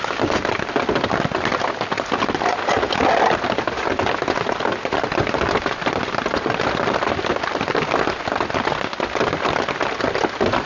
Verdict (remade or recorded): recorded